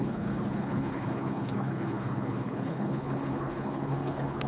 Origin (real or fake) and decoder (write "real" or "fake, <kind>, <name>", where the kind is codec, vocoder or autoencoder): fake, codec, HILCodec